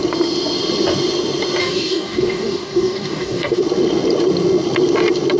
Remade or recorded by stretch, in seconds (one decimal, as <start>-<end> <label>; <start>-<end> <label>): 0.0-1.6 recorded; 1.6-3.6 remade; 3.6-5.4 recorded